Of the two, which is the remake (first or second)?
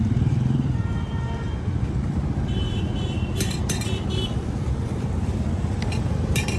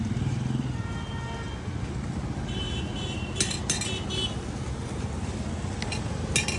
first